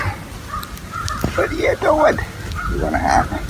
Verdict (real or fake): real